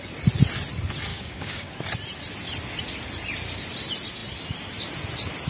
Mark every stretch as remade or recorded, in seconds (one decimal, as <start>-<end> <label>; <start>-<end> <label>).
0.0-1.1 recorded; 1.1-1.7 remade; 1.7-5.5 recorded